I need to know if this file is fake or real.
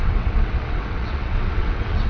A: fake